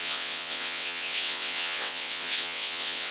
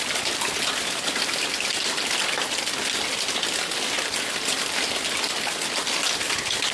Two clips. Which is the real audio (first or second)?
second